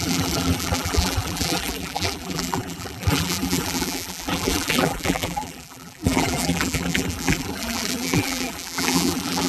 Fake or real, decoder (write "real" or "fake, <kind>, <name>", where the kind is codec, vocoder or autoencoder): fake, vocoder, BigVGAN v2